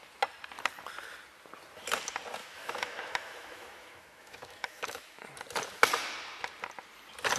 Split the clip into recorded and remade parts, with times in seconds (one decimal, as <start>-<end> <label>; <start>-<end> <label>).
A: 0.0-2.4 recorded; 2.4-5.2 remade; 5.2-7.4 recorded